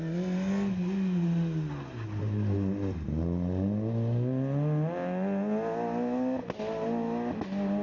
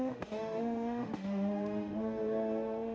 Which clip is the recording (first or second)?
first